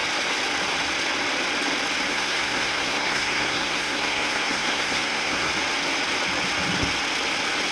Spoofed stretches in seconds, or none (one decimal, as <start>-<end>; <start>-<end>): 2.1-5.5

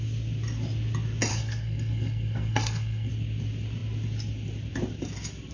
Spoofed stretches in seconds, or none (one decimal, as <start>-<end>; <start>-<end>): 1.3-3.1

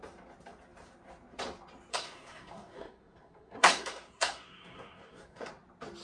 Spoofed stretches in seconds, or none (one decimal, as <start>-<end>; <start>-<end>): 1.9-5.5

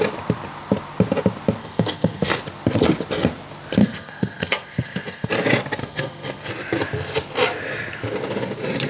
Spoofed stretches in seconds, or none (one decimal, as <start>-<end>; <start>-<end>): 1.6-2.3; 3.8-5.3; 5.8-6.5

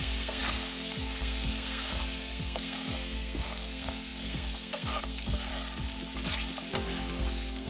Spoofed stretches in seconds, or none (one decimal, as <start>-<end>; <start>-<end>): 0.0-5.5; 7.2-7.7

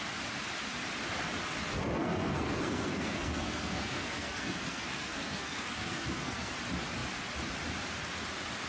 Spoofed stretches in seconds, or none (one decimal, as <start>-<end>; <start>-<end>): 1.8-6.5